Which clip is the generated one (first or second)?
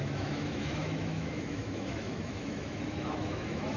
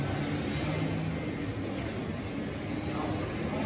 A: first